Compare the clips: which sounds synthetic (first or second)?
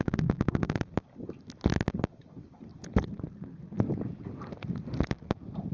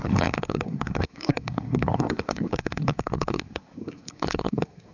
second